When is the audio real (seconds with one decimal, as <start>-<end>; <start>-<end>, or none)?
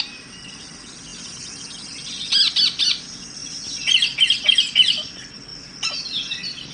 0.0-6.7